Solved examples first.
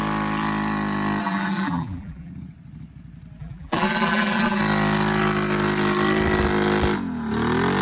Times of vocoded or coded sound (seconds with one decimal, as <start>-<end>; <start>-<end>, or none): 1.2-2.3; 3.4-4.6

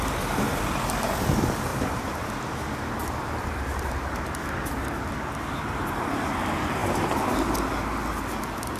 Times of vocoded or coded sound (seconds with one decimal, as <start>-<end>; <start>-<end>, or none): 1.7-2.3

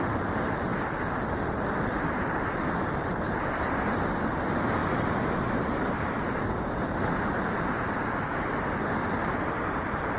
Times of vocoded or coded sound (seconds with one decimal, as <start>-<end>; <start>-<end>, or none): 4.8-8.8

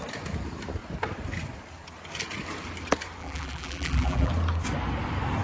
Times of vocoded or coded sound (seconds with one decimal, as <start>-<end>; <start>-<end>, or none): 3.2-4.3